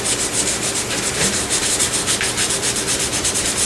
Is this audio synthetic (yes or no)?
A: yes